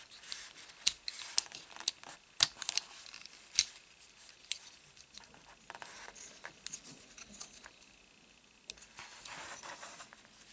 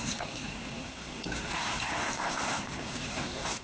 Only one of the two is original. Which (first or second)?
first